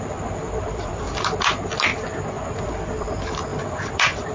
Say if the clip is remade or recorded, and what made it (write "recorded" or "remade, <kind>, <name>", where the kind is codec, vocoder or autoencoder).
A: recorded